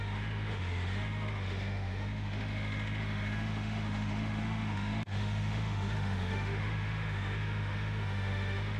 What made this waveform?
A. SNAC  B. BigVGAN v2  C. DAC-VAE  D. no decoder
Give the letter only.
C